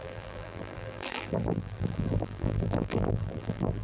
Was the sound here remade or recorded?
remade